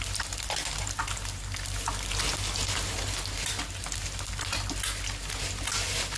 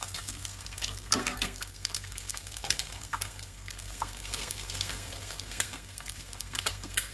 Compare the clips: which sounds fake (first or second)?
second